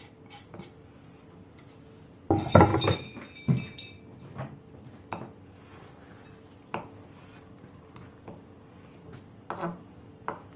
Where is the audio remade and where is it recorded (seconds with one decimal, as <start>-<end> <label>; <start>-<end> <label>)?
0.0-10.6 recorded